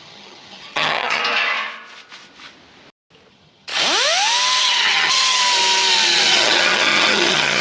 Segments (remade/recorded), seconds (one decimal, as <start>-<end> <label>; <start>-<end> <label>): 0.0-1.2 remade; 1.2-3.3 recorded; 3.3-3.7 remade; 3.7-4.6 recorded; 4.6-5.4 remade; 5.4-6.3 recorded; 6.3-7.6 remade